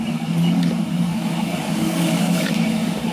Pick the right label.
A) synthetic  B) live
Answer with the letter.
A